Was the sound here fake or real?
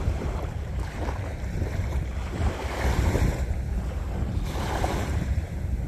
fake